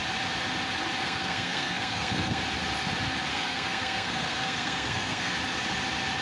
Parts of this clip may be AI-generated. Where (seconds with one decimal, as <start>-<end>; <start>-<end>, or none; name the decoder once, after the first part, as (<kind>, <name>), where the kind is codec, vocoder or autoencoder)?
1.0-2.4 (codec, SNAC); 3.3-5.3